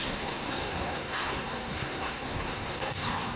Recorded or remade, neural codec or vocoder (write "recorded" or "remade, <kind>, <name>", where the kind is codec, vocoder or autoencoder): remade, codec, SNAC